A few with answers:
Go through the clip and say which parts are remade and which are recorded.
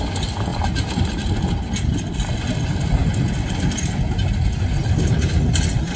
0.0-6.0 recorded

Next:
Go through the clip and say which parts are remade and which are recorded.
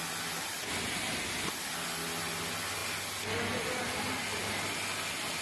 0.0-5.4 recorded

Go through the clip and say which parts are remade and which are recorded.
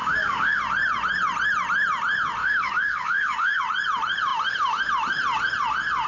0.0-0.6 remade; 0.6-2.4 recorded; 2.4-3.6 remade; 3.6-6.1 recorded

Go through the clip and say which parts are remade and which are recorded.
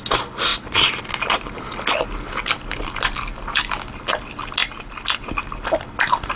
0.0-6.4 recorded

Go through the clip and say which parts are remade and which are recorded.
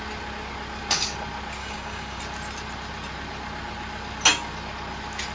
0.0-1.6 recorded; 1.6-2.2 remade; 2.2-5.3 recorded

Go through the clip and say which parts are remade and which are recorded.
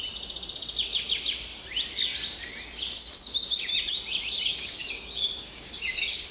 0.0-4.5 recorded; 4.5-6.3 remade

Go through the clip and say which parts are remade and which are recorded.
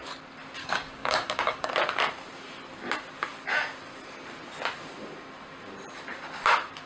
0.0-0.6 recorded; 0.6-1.7 remade; 1.7-6.9 recorded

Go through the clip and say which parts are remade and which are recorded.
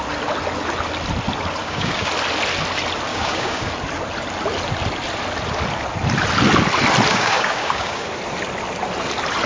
0.0-1.6 recorded; 1.6-2.1 remade; 2.1-3.1 recorded; 3.1-3.7 remade; 3.7-7.1 recorded; 7.1-8.1 remade; 8.1-9.5 recorded